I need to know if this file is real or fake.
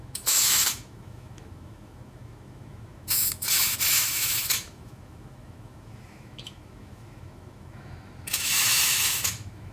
fake